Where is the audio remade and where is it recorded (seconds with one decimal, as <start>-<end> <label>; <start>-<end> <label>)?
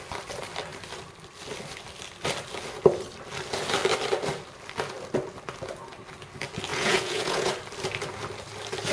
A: 0.0-6.7 recorded; 6.7-7.5 remade; 7.5-8.9 recorded